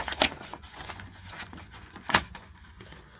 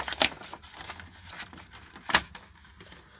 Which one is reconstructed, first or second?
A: first